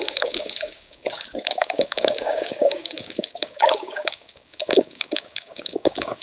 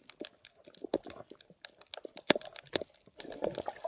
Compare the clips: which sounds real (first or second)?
second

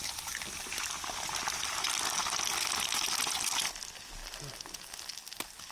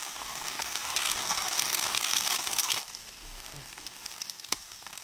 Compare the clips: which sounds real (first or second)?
first